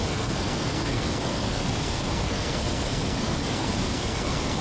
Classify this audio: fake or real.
fake